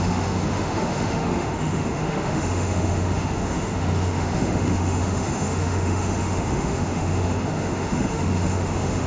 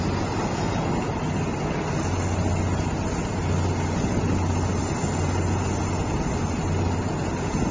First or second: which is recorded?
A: second